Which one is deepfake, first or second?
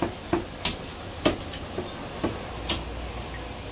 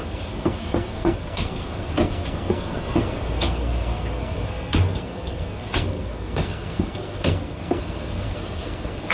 second